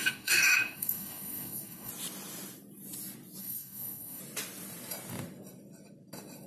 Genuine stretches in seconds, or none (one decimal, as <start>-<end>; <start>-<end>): 1.9-3.4; 4.2-6.5